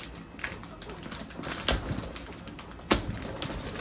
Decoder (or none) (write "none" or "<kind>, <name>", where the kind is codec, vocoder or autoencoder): none